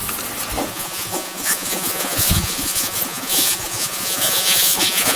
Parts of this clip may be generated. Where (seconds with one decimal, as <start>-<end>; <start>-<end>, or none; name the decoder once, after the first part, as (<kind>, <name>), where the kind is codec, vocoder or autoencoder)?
0.7-5.2 (vocoder, Vocos)